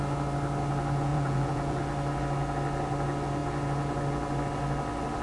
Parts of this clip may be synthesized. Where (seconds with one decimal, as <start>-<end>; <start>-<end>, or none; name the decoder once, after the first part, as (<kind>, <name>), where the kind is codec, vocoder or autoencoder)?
1.1-1.8 (vocoder, Vocos)